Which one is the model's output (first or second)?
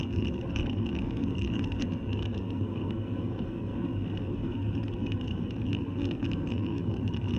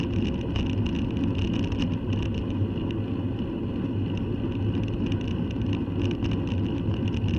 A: first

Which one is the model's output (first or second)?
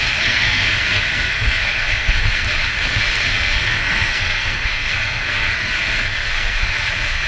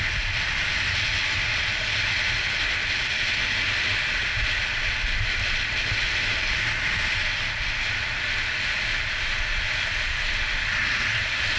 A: first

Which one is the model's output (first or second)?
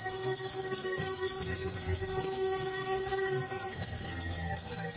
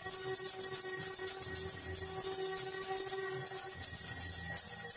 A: first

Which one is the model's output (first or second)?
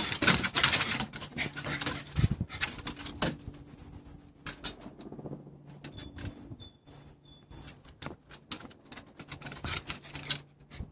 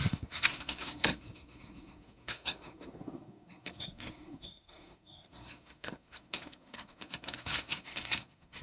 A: second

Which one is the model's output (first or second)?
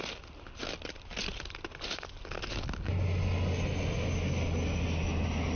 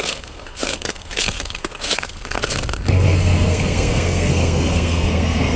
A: second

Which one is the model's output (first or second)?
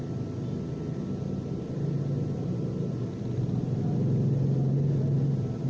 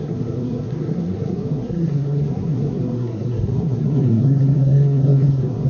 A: second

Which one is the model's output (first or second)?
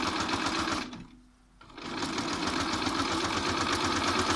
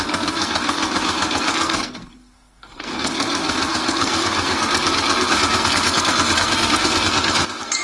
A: second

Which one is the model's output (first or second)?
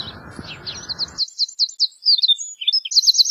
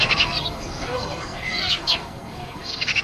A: second